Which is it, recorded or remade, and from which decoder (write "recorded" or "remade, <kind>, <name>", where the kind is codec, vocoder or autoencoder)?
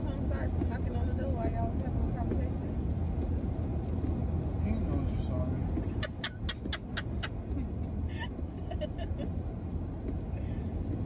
recorded